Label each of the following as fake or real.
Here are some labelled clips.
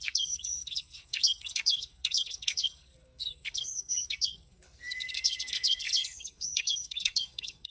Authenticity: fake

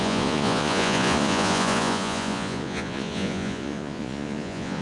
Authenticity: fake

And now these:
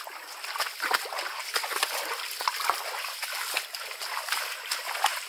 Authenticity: real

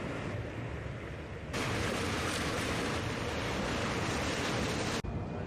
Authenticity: real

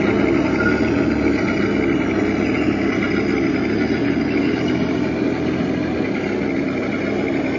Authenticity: real